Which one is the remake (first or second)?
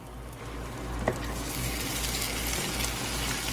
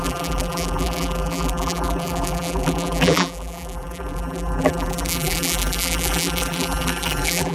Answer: second